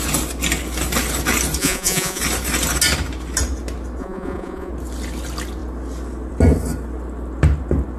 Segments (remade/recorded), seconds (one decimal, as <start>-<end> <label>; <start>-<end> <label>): 0.0-1.6 recorded; 1.6-2.2 remade; 2.2-4.0 recorded; 4.0-4.7 remade; 4.7-8.0 recorded